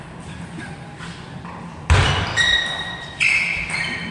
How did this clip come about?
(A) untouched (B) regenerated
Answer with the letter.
A